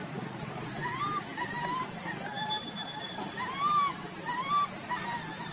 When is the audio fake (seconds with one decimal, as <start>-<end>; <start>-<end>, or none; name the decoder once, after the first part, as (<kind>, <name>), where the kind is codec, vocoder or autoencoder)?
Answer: none